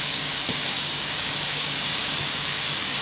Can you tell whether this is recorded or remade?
remade